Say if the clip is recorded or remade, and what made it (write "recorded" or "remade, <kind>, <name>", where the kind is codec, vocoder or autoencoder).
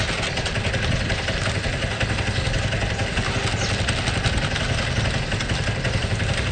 recorded